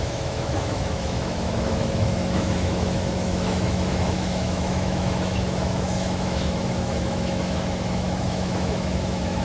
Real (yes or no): no